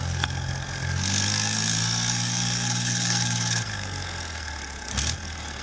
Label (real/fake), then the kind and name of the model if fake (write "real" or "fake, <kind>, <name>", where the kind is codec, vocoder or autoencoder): fake, codec, SNAC